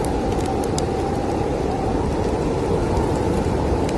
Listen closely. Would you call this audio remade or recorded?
recorded